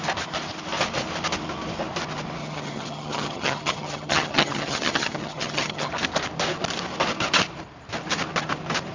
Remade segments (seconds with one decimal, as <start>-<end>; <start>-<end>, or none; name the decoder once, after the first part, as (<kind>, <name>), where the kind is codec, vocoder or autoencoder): 2.4-5.9 (vocoder, HiFi-GAN)